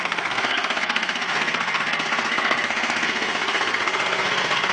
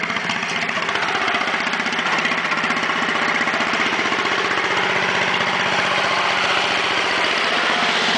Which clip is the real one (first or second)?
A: second